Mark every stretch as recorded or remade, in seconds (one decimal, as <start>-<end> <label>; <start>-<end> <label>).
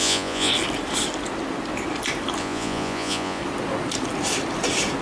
0.0-0.5 remade; 0.5-2.4 recorded; 2.4-3.4 remade; 3.4-5.0 recorded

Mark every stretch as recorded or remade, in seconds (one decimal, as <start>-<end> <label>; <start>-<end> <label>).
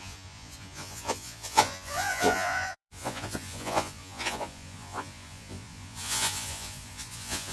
0.0-7.5 remade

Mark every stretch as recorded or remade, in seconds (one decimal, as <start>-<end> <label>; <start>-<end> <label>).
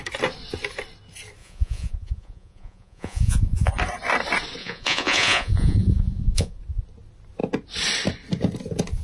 0.0-1.4 recorded; 1.4-3.7 remade; 3.7-4.6 recorded; 4.6-6.6 remade; 6.6-9.0 recorded